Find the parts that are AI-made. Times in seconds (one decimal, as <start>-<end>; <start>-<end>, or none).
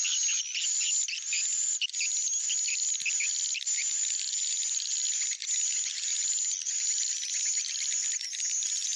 none